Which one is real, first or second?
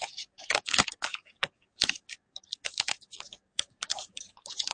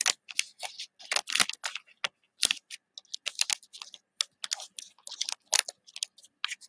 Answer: second